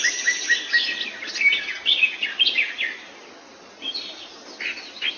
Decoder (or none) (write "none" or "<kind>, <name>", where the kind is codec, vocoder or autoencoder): none